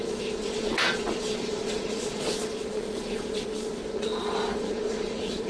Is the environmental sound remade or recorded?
remade